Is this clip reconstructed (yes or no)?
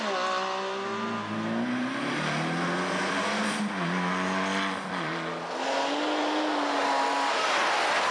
no